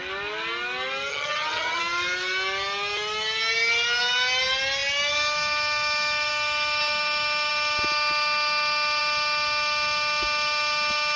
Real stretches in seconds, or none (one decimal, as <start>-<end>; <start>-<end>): 0.0-1.1; 1.8-11.2